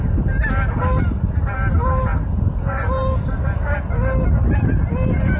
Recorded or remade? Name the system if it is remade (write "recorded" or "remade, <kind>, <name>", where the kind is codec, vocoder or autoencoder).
recorded